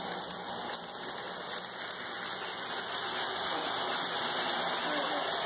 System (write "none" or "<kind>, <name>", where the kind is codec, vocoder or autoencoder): none